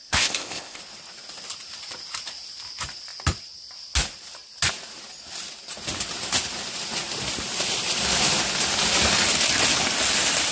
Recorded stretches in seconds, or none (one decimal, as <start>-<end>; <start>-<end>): 0.8-10.5